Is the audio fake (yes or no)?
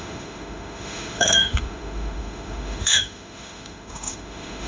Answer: yes